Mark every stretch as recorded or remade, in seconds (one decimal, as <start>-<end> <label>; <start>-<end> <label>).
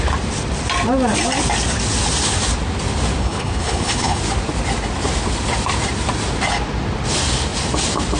0.0-3.2 recorded; 3.2-4.2 remade; 4.2-8.2 recorded